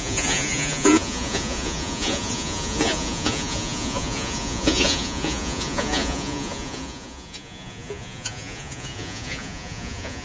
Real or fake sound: fake